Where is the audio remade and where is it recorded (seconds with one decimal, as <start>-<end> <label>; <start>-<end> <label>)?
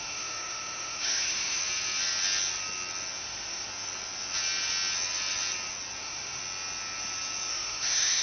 0.0-1.6 remade; 1.6-3.2 recorded; 3.2-3.7 remade; 3.7-6.0 recorded; 6.0-6.4 remade; 6.4-7.5 recorded; 7.5-8.2 remade